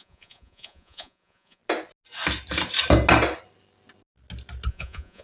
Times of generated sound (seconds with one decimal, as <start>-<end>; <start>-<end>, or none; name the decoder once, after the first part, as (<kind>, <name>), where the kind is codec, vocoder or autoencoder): 0.0-1.6 (vocoder, Vocos); 4.7-5.2

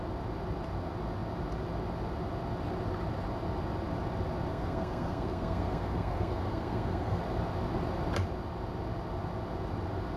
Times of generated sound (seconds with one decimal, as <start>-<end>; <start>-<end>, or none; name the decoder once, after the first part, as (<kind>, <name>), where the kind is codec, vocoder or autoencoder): 4.5-7.2 (codec, SNAC)

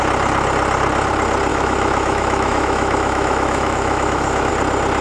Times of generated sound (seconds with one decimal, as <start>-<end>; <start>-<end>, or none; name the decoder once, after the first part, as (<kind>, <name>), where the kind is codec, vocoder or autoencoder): 1.5-4.5 (autoencoder, DAC-VAE)

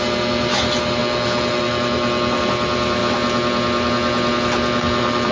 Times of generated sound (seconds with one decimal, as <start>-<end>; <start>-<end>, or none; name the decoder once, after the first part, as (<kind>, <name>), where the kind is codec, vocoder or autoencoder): 0.0-1.0 (vocoder, BigVGAN v2); 2.4-3.0

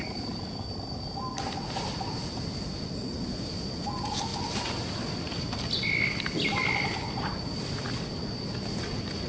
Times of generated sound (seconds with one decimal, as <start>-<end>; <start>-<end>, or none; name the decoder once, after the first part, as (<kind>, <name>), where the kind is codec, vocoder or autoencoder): none

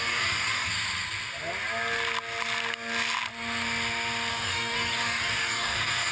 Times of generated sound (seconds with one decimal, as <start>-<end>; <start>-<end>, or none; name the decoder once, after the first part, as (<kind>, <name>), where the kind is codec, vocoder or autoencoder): 0.0-0.7 (codec, DAC); 4.3-6.1